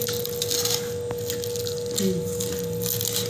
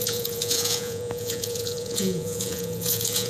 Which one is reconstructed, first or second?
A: second